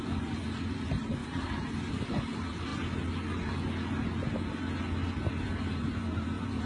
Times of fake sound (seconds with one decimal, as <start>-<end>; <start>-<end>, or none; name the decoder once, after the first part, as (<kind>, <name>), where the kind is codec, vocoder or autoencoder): 0.0-2.7 (vocoder, BigVGAN v2); 5.3-6.7